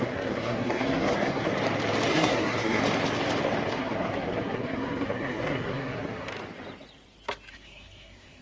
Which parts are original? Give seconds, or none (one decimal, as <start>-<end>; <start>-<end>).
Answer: 1.5-2.1; 2.8-3.7; 6.3-7.5